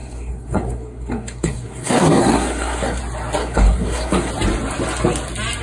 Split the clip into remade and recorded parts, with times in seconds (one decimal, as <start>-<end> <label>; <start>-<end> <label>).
0.0-3.0 remade; 3.0-3.4 recorded; 3.4-4.3 remade; 4.3-5.6 recorded